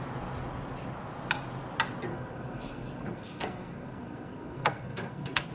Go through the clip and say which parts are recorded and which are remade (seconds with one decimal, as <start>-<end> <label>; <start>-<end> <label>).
0.0-2.1 recorded; 2.1-5.5 remade